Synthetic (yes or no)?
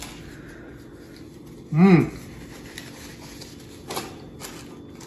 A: no